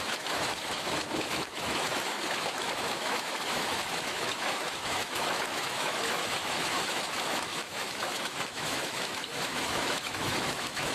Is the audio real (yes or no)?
no